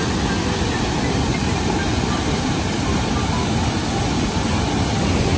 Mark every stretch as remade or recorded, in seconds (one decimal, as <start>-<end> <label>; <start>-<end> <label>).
0.0-5.4 recorded